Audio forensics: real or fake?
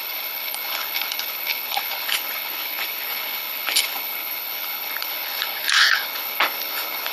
fake